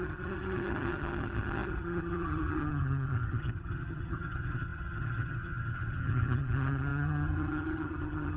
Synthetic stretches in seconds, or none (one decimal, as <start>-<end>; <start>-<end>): 0.0-8.4